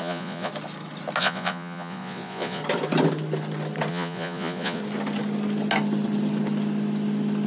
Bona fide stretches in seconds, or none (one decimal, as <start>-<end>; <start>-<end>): 0.5-1.2; 2.6-3.9; 4.8-7.5